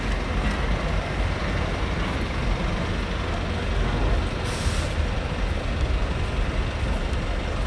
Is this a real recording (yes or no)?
yes